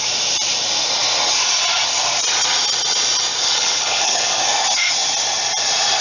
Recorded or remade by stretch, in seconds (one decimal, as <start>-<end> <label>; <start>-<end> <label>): 0.0-3.4 recorded; 3.4-4.4 remade; 4.4-6.0 recorded